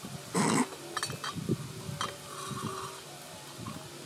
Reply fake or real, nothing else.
real